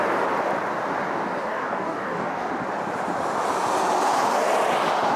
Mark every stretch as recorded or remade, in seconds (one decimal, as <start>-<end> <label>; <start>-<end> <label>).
0.0-1.4 recorded; 1.4-2.5 remade; 2.5-5.2 recorded